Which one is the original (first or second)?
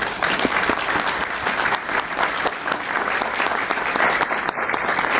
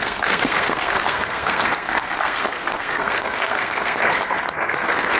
first